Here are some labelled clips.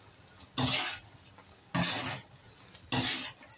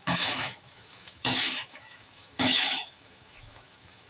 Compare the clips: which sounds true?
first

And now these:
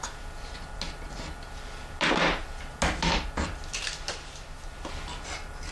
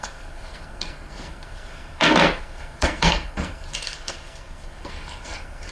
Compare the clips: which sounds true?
first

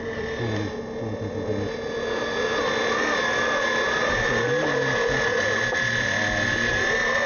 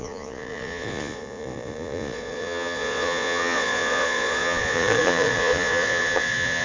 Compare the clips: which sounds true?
first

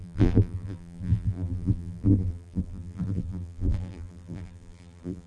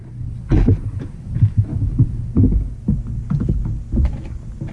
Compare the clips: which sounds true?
second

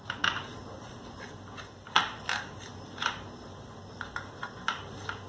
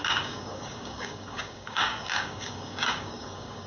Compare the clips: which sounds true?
first